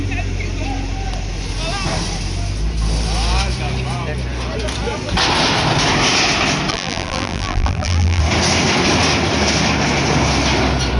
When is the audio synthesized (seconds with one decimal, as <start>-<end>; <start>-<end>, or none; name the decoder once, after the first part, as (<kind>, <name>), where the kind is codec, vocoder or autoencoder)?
6.7-8.2 (vocoder, BigVGAN v2)